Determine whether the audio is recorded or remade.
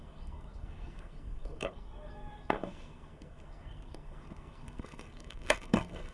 remade